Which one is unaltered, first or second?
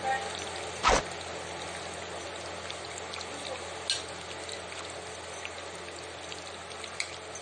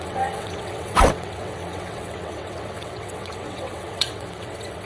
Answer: first